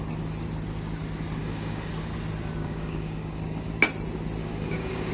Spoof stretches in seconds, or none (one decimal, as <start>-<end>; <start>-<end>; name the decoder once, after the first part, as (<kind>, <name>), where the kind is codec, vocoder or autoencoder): 1.4-1.9 (codec, DAC); 2.6-3.7; 4.4-5.1